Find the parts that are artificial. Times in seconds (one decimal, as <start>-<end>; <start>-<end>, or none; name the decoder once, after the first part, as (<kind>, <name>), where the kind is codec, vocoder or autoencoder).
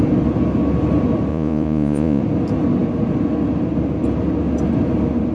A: 1.3-2.2 (vocoder, Vocos)